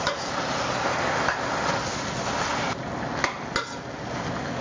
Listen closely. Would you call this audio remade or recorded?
recorded